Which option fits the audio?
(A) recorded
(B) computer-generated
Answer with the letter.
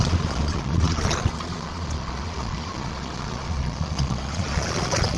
B